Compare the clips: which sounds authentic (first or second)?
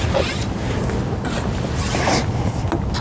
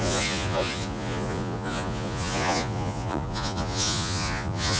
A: first